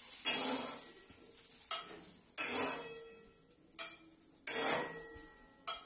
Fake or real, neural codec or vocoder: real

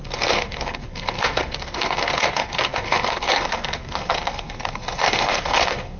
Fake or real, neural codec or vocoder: fake, codec, SNAC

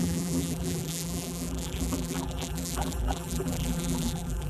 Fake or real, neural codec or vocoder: fake, vocoder, BigVGAN v2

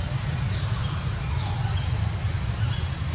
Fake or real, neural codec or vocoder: real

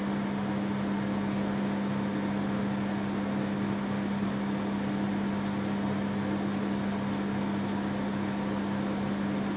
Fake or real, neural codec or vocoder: real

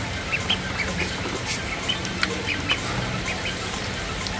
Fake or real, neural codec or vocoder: fake, vocoder, BigVGAN v2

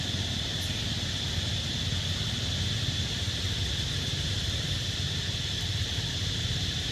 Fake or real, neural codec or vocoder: real